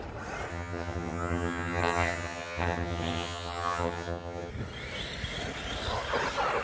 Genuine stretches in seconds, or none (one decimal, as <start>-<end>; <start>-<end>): 0.0-0.5; 4.5-6.6